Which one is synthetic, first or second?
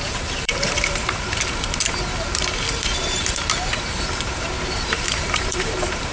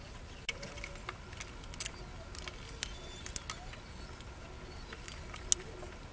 first